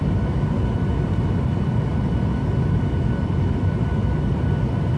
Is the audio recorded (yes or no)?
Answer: yes